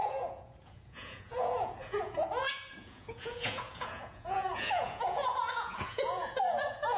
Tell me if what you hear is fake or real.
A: fake